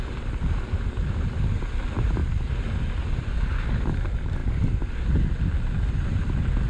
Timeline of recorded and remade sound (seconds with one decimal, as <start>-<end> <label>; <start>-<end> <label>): 0.0-6.7 recorded

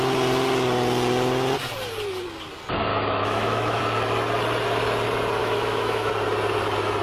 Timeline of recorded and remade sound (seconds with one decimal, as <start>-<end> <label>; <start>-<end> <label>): 0.0-2.9 recorded; 2.9-3.8 remade; 3.8-5.4 recorded; 5.4-6.1 remade; 6.1-7.0 recorded

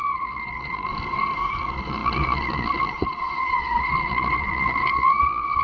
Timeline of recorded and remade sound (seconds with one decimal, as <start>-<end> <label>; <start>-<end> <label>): 0.0-0.9 remade; 0.9-1.6 recorded; 1.6-5.6 remade

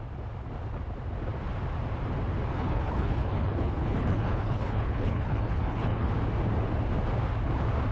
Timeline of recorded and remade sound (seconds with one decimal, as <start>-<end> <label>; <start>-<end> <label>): 0.0-2.5 recorded; 2.5-6.1 remade; 6.1-7.9 recorded

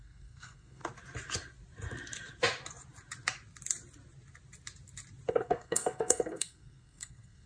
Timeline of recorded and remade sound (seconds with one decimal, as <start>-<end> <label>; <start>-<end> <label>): 0.0-0.8 remade; 0.8-5.3 recorded; 5.3-7.5 remade